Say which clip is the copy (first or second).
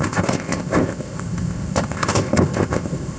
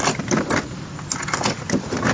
first